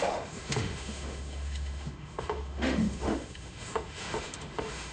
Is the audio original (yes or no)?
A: no